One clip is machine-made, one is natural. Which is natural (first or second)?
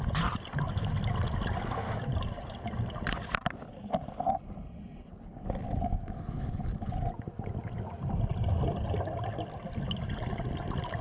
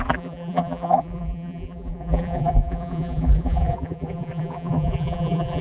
first